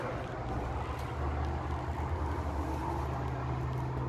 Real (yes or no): yes